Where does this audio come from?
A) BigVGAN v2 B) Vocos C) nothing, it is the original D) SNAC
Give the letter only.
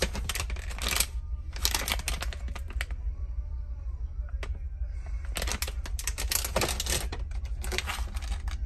C